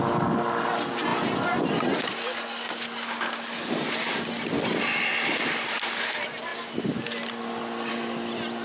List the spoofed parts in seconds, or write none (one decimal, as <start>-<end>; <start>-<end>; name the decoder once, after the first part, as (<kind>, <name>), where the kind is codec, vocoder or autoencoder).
none